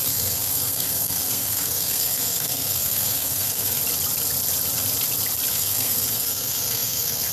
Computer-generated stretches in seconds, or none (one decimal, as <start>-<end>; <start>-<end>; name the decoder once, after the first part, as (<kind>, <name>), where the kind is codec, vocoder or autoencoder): 0.0-3.8 (codec, SNAC); 5.5-7.3